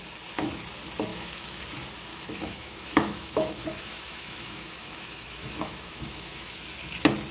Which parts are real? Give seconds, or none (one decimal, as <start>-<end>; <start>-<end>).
0.0-1.1; 1.6-2.1; 6.5-7.3